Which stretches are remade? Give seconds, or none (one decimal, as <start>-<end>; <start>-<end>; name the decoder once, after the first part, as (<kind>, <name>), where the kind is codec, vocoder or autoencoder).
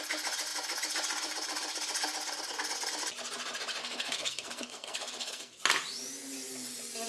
3.8-5.6 (codec, SNAC)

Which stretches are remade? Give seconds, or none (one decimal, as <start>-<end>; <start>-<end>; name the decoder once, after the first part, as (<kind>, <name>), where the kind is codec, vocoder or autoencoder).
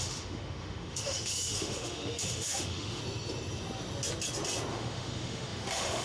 0.0-3.0 (autoencoder, DAC-VAE); 4.7-6.0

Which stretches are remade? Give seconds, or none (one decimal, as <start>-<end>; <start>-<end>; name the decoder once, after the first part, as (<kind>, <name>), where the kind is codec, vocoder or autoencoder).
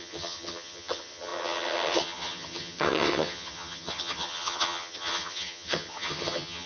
0.0-6.7 (vocoder, HiFi-GAN)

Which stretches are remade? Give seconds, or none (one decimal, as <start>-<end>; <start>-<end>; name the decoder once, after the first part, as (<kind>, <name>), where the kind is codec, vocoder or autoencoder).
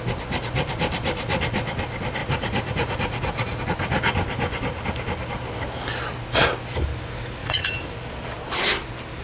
2.2-3.6 (vocoder, Vocos); 7.4-7.9